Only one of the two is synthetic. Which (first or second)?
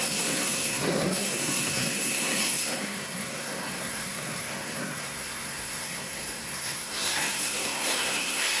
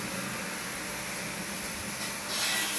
first